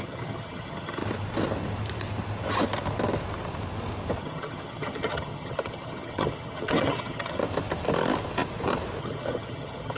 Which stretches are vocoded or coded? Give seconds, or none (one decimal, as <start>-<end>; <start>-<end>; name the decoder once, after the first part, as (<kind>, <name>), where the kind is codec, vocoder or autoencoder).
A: 0.0-1.0 (vocoder, HiFi-GAN); 4.2-7.4; 9.0-10.0